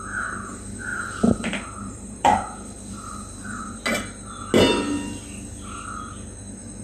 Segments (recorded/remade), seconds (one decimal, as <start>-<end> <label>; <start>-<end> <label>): 0.0-0.9 recorded; 0.9-3.6 remade; 3.6-6.8 recorded